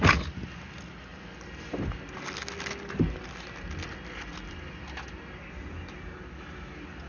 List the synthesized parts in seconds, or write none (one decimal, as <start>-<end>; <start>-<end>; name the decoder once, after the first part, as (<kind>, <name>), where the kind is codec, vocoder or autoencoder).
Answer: 1.1-2.2 (vocoder, BigVGAN v2); 4.3-5.0